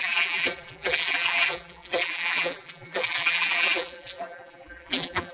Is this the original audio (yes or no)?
no